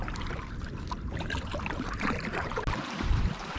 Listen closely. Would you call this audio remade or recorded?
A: remade